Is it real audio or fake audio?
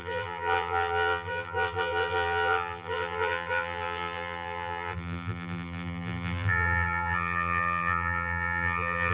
fake